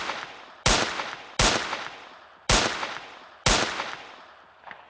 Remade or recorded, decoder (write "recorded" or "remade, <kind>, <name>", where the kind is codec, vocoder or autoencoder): recorded